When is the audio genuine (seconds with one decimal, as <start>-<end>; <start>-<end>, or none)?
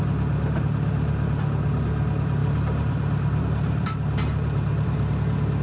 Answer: 0.0-2.4; 5.1-5.6